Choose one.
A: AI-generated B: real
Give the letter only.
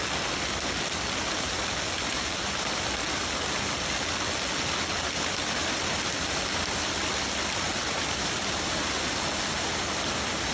B